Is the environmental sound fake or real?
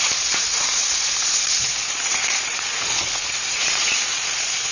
fake